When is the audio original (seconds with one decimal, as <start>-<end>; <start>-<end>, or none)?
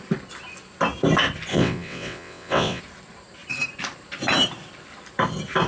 0.0-1.5; 2.8-5.7